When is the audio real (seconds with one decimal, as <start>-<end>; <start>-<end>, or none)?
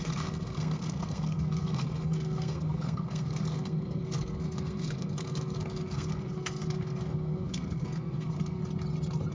8.6-9.3